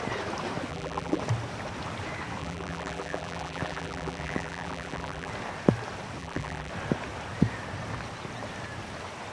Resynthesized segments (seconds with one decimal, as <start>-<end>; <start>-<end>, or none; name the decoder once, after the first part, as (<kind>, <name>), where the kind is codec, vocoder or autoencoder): 0.7-1.2 (vocoder, BigVGAN v2); 2.4-5.3; 6.2-6.7

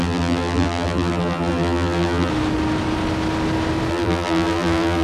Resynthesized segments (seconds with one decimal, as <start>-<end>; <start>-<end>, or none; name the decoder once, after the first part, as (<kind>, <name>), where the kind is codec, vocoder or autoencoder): 0.0-2.3 (vocoder, BigVGAN v2); 3.9-5.0

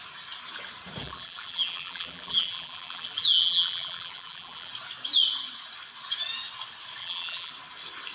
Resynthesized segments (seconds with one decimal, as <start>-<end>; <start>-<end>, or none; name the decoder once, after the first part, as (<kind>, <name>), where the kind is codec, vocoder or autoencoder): 1.0-4.7 (vocoder, BigVGAN v2); 7.0-7.5

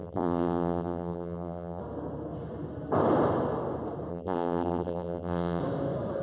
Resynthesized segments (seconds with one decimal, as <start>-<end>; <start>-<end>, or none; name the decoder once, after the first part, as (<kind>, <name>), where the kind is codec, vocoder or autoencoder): 0.0-1.8 (vocoder, BigVGAN v2); 4.1-5.6

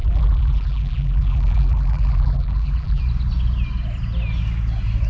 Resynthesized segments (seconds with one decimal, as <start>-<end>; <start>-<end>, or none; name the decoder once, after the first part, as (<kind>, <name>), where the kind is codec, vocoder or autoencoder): 0.0-3.0 (vocoder, BigVGAN v2)

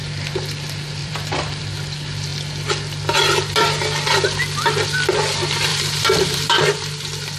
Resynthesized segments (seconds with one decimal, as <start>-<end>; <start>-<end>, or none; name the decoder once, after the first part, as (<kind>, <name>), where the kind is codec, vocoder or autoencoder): 1.0-1.6 (vocoder, BigVGAN v2); 5.7-6.6

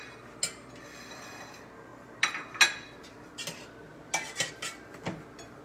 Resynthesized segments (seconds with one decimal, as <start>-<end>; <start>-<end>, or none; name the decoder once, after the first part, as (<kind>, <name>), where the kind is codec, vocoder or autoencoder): none